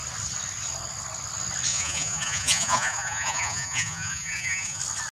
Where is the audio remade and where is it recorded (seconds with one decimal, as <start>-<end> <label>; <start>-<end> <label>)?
0.0-1.7 recorded; 1.7-4.8 remade; 4.8-5.2 recorded